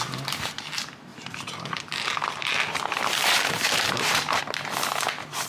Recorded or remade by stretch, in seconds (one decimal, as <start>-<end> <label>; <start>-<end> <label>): 0.0-1.1 recorded; 1.1-4.4 remade; 4.4-5.5 recorded